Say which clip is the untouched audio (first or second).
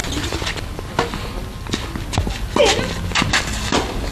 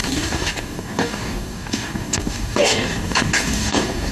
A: first